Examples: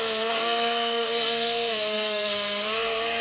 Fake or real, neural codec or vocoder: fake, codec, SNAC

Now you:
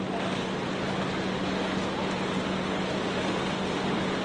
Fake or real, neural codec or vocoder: real